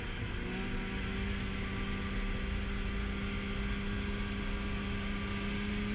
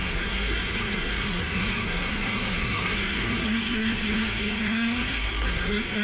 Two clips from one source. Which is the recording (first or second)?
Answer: first